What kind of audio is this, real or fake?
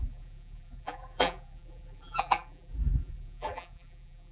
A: fake